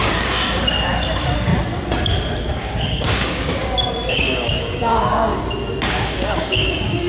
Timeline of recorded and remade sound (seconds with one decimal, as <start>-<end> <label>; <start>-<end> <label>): 0.0-1.5 remade; 1.5-2.6 recorded; 2.6-3.5 remade; 3.5-4.1 recorded; 4.1-5.3 remade; 5.3-5.9 recorded; 5.9-7.1 remade